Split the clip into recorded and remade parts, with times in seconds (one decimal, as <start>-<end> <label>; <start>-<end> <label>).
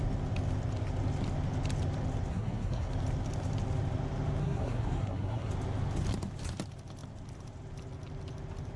0.0-2.3 recorded; 2.3-2.9 remade; 2.9-4.4 recorded; 4.4-5.5 remade; 5.5-8.8 recorded